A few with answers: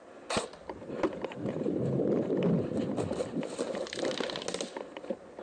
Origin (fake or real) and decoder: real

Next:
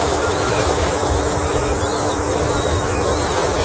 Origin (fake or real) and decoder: fake, autoencoder, DAC-VAE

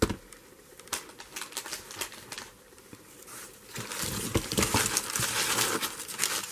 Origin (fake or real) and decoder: real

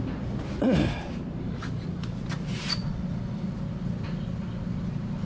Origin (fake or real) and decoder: real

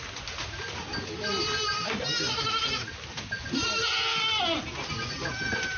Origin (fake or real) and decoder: real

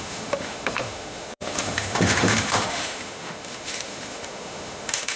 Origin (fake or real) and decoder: fake, autoencoder, DAC-VAE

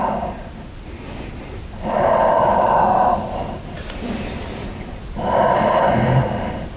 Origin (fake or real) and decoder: fake, vocoder, BigVGAN v2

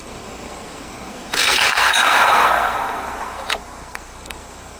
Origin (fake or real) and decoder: fake, codec, SNAC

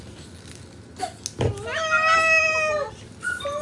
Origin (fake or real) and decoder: real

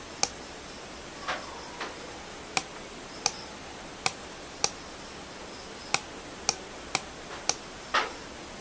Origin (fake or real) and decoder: real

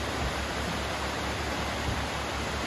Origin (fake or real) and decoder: real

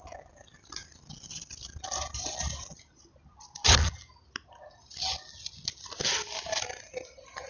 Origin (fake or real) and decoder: real